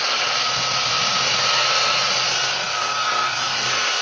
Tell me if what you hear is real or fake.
real